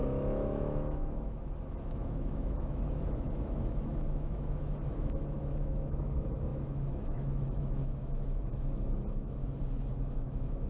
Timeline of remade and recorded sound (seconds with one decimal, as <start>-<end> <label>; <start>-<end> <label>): 0.0-9.4 remade; 9.4-10.0 recorded; 10.0-10.7 remade